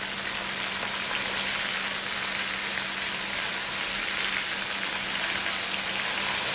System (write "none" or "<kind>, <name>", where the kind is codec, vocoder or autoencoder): none